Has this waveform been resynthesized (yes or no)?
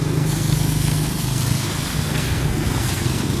yes